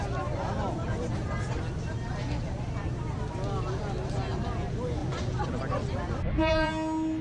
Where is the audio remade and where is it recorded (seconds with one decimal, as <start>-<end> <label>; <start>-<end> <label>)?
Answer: 0.0-5.0 recorded; 5.0-6.7 remade; 6.7-7.2 recorded